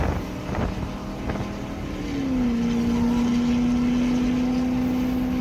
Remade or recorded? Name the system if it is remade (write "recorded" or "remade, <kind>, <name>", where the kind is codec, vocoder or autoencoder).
recorded